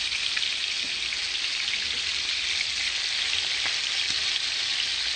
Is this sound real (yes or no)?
yes